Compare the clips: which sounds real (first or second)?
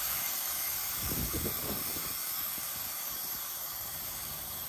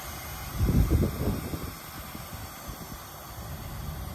second